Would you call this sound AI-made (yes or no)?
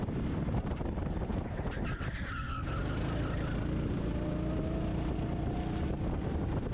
no